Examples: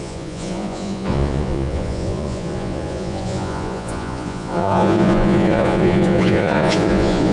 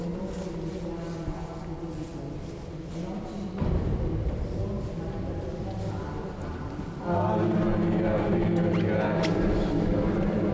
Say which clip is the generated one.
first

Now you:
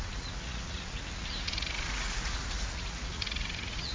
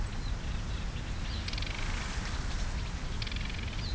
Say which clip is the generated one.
first